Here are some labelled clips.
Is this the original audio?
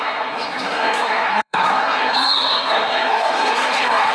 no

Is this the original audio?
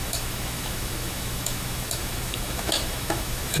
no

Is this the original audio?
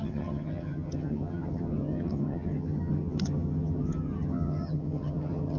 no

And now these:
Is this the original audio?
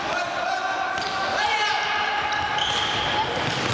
yes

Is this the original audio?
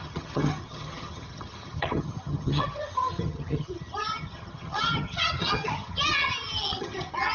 no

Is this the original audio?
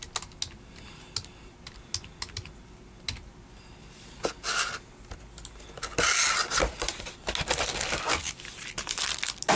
yes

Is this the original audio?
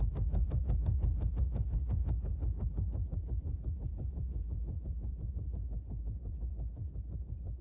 yes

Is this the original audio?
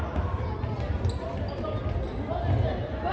yes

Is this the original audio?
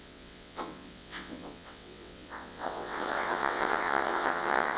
no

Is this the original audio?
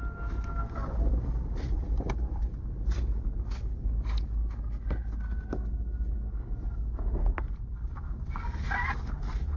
yes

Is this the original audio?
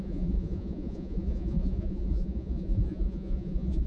no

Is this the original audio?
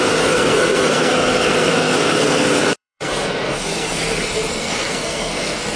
no